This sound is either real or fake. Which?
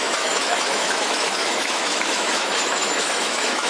fake